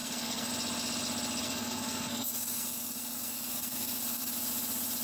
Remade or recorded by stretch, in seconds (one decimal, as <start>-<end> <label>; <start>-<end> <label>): 0.0-0.5 remade; 0.5-1.4 recorded; 1.4-4.3 remade; 4.3-5.0 recorded